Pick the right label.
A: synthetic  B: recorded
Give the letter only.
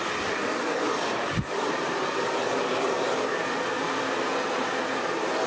B